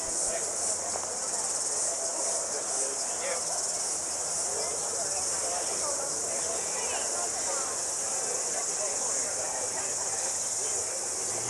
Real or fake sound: real